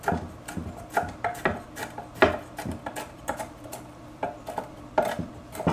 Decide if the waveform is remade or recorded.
remade